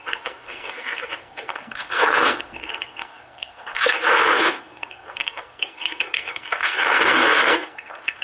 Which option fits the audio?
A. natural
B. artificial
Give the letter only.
B